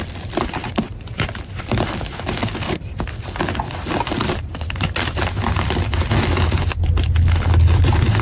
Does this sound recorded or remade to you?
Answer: remade